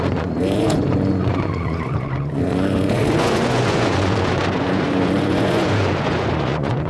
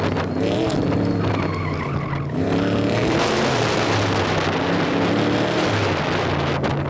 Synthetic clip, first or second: first